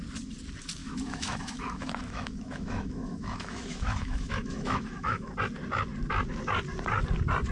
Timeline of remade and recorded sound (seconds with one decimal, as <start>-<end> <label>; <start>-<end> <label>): 0.0-0.8 recorded; 0.8-5.3 remade; 5.3-7.5 recorded

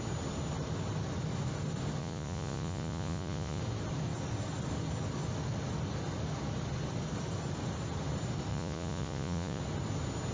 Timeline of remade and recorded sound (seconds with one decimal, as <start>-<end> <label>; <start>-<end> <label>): 0.0-2.0 recorded; 2.0-3.6 remade; 3.6-8.5 recorded; 8.5-9.6 remade; 9.6-10.3 recorded

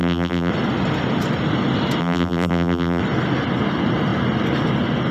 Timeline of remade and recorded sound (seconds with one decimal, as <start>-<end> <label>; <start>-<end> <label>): 0.0-0.5 remade; 0.5-2.0 recorded; 2.0-3.0 remade; 3.0-5.1 recorded

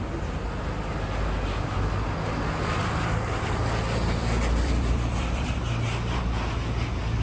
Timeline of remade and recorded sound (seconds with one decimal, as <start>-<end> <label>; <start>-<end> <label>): 0.0-2.8 recorded; 2.8-5.6 remade; 5.6-7.2 recorded

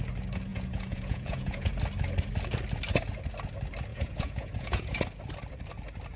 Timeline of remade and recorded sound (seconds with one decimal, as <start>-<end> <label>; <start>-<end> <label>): 0.0-0.5 recorded; 0.5-1.7 remade; 1.7-3.9 recorded; 3.9-5.0 remade; 5.0-6.2 recorded

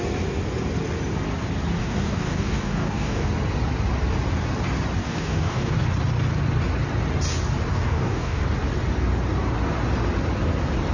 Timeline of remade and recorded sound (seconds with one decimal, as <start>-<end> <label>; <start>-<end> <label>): 0.0-1.8 recorded; 1.8-3.3 remade; 3.3-5.0 recorded; 5.0-5.8 remade; 5.8-7.7 recorded; 7.7-8.4 remade; 8.4-10.9 recorded

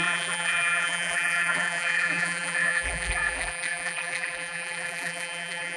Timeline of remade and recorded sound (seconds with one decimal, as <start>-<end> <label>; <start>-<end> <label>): 0.0-5.8 remade